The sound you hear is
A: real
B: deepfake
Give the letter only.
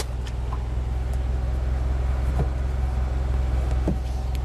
A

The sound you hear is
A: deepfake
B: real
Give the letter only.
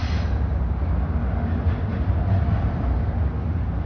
B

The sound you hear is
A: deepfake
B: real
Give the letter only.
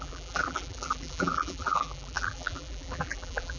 A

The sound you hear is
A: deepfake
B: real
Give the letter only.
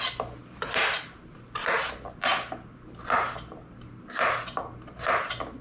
B